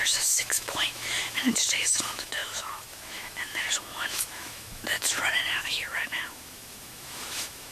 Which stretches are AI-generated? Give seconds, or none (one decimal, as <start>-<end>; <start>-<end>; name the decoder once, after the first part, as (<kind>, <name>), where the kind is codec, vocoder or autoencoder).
0.0-7.7 (autoencoder, DAC-VAE)